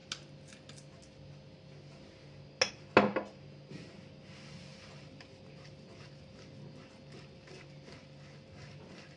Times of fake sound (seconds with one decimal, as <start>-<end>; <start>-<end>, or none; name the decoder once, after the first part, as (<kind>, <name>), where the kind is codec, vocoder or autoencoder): none